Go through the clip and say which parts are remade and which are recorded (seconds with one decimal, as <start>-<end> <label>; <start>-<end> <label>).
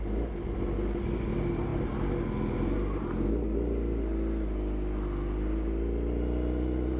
0.0-7.0 recorded